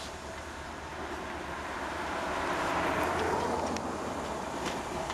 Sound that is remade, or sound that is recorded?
recorded